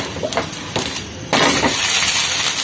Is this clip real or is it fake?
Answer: real